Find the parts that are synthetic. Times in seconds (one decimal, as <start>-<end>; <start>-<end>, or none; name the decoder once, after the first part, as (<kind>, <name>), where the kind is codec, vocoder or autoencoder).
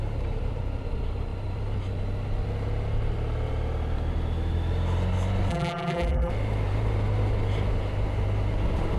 5.5-6.3 (vocoder, BigVGAN v2)